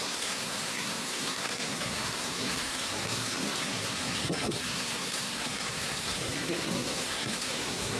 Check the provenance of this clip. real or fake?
fake